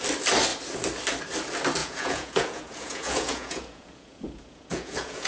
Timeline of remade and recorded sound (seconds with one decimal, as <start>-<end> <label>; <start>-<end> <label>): 0.0-1.8 recorded; 1.8-5.3 remade